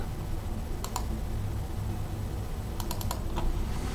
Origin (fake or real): real